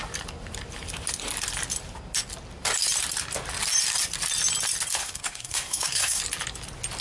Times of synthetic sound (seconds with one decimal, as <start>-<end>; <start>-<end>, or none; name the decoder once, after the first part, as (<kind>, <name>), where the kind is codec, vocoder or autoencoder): 5.0-6.2 (codec, SNAC)